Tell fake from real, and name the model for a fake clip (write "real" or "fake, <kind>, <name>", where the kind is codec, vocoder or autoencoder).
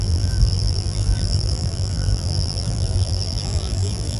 fake, vocoder, BigVGAN v2